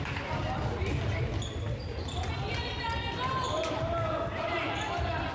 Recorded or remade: recorded